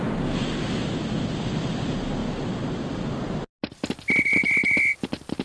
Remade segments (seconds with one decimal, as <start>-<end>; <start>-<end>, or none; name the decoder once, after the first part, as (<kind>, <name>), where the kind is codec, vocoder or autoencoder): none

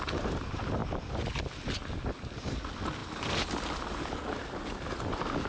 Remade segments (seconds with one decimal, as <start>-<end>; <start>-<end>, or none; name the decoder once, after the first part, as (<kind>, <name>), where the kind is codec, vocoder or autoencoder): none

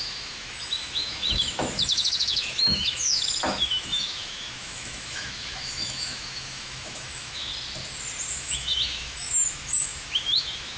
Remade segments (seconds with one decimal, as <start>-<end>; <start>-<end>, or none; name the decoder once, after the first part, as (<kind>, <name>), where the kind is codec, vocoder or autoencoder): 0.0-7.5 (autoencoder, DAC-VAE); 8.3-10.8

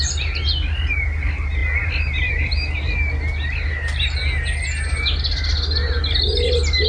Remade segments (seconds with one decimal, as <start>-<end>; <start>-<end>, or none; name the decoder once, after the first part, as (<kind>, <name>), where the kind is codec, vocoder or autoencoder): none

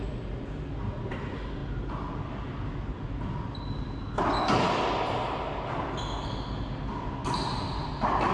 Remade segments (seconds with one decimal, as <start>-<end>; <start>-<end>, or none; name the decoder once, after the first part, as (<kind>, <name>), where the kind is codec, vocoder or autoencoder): none

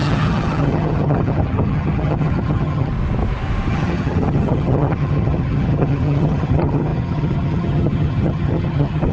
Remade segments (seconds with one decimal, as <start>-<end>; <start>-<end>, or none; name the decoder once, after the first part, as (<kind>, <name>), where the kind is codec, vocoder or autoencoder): 0.0-2.9 (vocoder, HiFi-GAN); 3.7-9.1

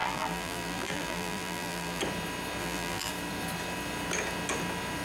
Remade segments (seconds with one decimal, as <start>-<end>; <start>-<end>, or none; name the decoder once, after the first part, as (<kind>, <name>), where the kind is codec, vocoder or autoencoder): 0.0-2.0 (vocoder, BigVGAN v2); 2.6-3.1